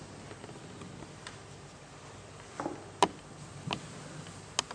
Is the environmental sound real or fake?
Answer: real